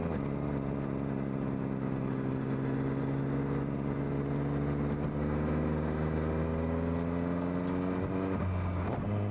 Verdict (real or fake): real